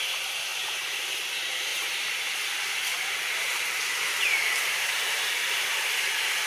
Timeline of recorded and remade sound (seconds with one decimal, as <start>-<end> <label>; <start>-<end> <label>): 0.0-0.5 recorded; 0.5-1.0 remade; 1.0-1.7 recorded; 1.7-2.2 remade; 2.2-2.9 recorded; 2.9-5.2 remade; 5.2-6.5 recorded